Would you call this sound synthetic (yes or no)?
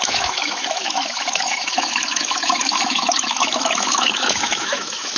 yes